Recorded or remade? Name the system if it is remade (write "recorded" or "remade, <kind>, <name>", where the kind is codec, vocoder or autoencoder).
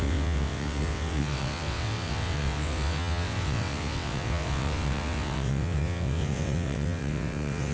remade, vocoder, WaveNeXt